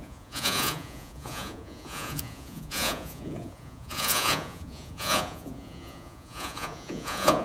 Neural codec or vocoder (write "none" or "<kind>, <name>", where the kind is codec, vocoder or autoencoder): vocoder, Vocos